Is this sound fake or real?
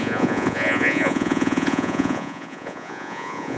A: fake